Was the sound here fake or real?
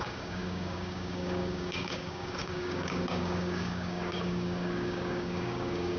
fake